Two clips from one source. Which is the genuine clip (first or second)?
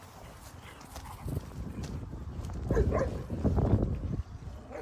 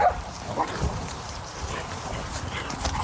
first